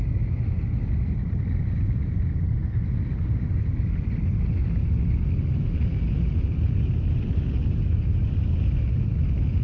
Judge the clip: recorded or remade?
recorded